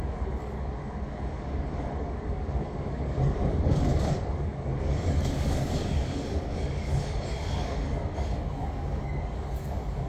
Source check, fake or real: fake